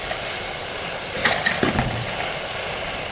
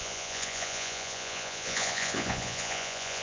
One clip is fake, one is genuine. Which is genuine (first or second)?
first